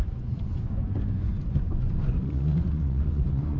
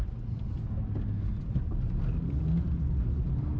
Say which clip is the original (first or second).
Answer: second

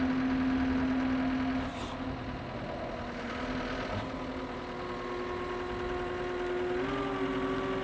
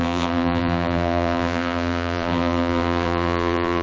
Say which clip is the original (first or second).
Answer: first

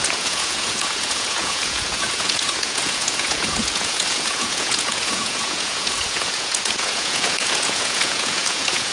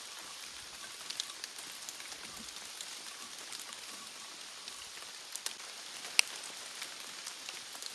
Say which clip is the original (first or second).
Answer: second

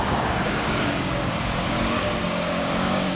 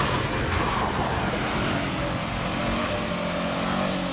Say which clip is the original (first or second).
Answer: second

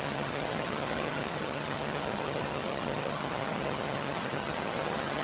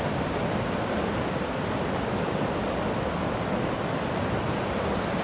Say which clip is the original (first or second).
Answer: second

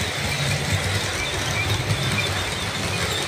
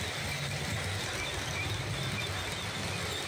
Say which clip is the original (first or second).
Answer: first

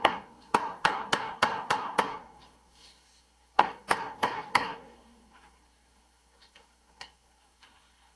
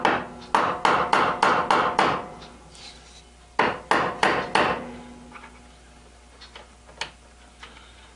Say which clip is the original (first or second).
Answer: second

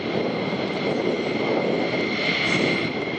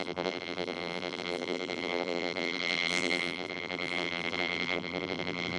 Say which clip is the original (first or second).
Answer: first